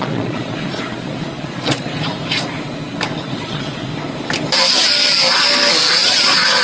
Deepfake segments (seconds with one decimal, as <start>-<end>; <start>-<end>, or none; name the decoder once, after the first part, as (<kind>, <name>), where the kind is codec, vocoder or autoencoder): 0.0-1.9 (vocoder, Vocos); 3.2-3.9; 5.9-6.6